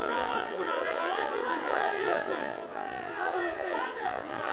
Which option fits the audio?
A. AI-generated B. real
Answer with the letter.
A